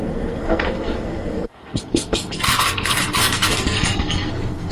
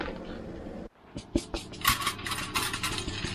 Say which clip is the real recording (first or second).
second